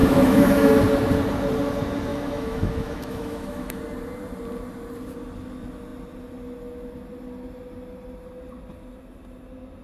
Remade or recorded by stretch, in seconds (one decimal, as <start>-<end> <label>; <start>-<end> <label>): 0.0-0.8 remade; 0.8-2.1 recorded; 2.1-3.8 remade; 3.8-9.8 recorded